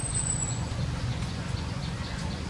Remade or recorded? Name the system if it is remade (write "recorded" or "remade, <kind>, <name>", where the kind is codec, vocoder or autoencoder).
remade, vocoder, Vocos